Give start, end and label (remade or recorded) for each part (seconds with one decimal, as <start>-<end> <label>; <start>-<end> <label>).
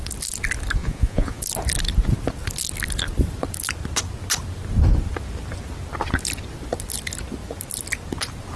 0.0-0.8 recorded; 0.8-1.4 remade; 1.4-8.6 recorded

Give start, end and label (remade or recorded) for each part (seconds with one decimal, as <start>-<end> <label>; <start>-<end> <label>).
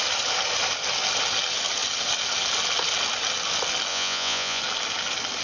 0.0-3.9 recorded; 3.9-4.6 remade; 4.6-5.4 recorded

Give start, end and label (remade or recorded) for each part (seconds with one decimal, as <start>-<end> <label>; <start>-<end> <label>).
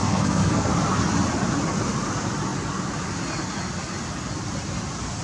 0.0-0.7 remade; 0.7-5.2 recorded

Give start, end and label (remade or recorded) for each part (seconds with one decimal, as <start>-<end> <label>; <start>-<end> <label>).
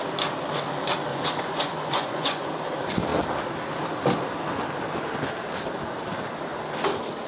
0.0-1.1 recorded; 1.1-2.5 remade; 2.5-7.3 recorded